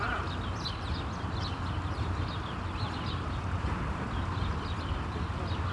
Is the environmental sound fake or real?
real